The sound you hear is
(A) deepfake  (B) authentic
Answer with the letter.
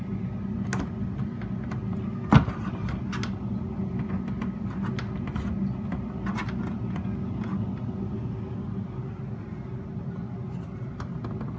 B